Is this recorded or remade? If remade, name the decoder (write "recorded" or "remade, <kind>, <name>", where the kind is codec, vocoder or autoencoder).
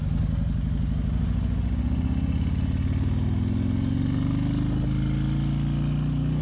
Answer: recorded